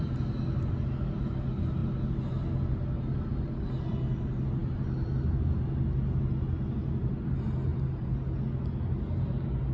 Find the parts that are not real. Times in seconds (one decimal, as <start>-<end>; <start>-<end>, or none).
none